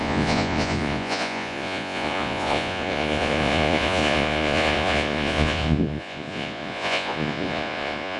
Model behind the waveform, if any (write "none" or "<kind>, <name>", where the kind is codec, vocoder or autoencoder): vocoder, Vocos